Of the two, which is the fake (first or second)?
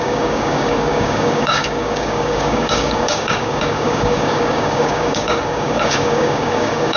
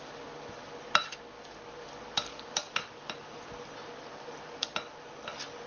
first